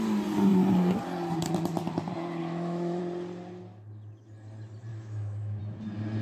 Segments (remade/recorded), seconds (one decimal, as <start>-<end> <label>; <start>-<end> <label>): 0.0-2.4 recorded; 2.4-3.0 remade; 3.0-4.9 recorded; 4.9-5.6 remade; 5.6-6.2 recorded